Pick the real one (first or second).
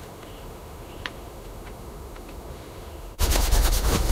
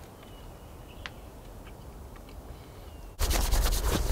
second